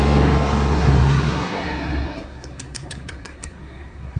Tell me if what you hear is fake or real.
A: fake